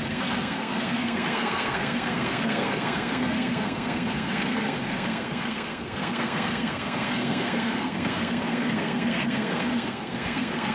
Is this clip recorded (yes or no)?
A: no